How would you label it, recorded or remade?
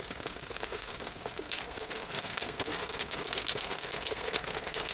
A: remade